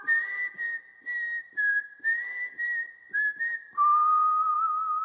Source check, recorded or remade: recorded